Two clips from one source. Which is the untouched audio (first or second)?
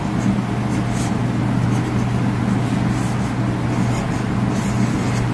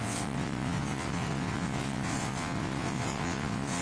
first